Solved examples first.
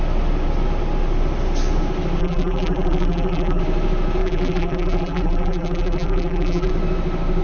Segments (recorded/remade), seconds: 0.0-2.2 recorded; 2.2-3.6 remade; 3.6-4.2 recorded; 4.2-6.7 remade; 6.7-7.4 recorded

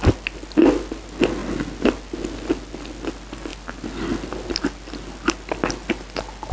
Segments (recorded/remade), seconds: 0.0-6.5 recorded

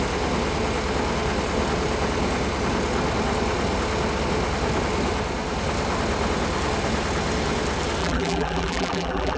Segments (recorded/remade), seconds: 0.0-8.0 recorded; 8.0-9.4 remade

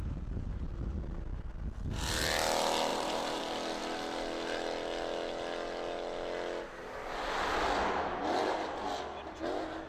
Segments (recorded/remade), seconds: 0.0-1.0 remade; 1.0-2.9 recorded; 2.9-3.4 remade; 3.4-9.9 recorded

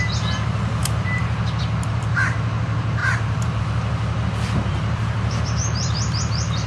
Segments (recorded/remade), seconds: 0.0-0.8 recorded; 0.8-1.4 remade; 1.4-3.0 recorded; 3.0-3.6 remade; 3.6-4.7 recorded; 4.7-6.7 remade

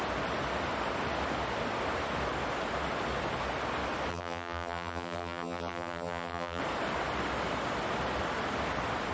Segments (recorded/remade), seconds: 0.0-4.1 recorded; 4.1-6.6 remade; 6.6-9.1 recorded

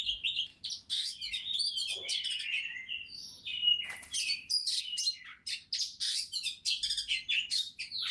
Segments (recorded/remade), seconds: 0.0-8.1 recorded

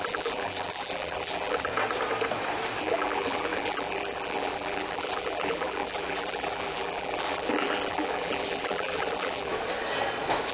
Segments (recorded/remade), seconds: 0.0-1.7 remade; 1.7-2.8 recorded; 2.8-9.5 remade; 9.5-10.5 recorded